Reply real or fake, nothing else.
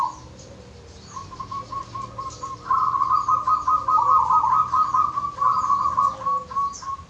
real